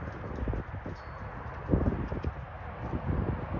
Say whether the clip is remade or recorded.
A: recorded